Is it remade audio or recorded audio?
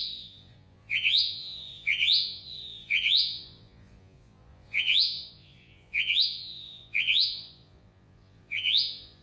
remade